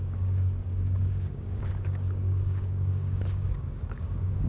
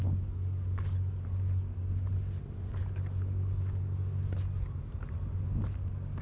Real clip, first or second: second